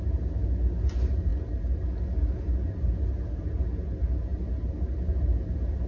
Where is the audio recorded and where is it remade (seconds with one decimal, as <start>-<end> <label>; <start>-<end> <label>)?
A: 0.0-5.9 recorded